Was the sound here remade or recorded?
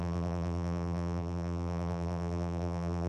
remade